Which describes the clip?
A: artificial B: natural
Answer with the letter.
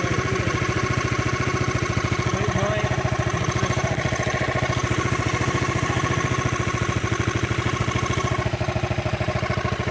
B